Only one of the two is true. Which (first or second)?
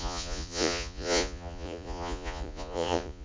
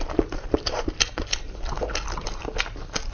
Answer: second